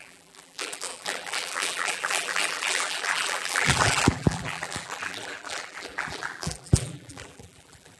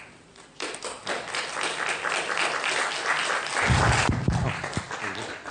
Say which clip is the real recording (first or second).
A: second